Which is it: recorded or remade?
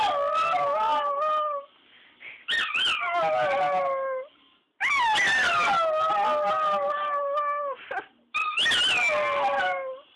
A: recorded